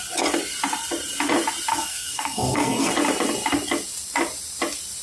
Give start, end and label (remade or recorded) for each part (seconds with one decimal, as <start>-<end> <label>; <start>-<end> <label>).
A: 0.0-1.7 recorded; 1.7-2.9 remade; 2.9-5.0 recorded

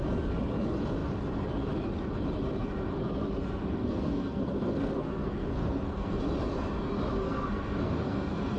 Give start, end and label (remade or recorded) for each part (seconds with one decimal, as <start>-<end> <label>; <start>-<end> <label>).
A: 0.0-3.6 recorded; 3.6-6.2 remade; 6.2-7.1 recorded; 7.1-8.6 remade

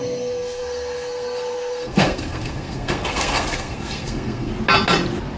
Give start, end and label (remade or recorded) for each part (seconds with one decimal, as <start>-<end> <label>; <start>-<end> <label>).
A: 0.0-4.5 remade; 4.5-5.4 recorded

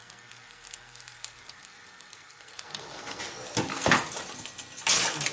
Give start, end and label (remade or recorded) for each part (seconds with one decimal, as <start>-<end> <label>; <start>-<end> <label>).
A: 0.0-3.2 remade; 3.2-3.7 recorded; 3.7-4.2 remade; 4.2-5.3 recorded

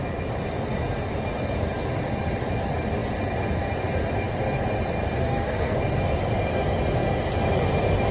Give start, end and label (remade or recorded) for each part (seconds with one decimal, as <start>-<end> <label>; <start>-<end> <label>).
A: 0.0-5.2 recorded; 5.2-5.8 remade; 5.8-8.1 recorded

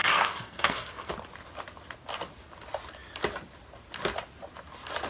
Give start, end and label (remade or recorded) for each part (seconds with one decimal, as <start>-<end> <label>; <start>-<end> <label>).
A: 0.0-1.1 remade; 1.1-5.1 recorded